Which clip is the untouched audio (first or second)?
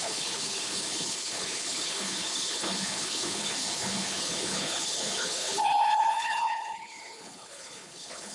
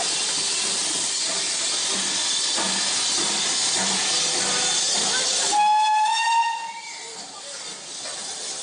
second